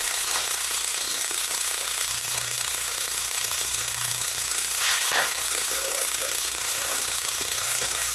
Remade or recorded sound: remade